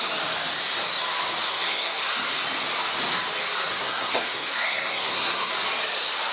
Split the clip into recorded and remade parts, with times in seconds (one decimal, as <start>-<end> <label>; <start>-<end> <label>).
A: 0.0-1.5 recorded; 1.5-2.0 remade; 2.0-3.7 recorded; 3.7-5.5 remade; 5.5-6.3 recorded